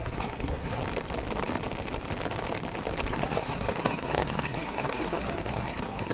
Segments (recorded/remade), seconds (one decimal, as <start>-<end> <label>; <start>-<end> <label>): 0.0-0.8 remade; 0.8-3.1 recorded; 3.1-6.1 remade